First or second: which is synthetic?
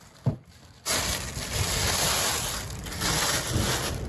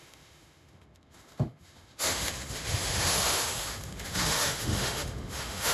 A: second